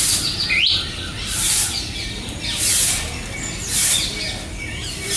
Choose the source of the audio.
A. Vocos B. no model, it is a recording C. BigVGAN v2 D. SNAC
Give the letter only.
B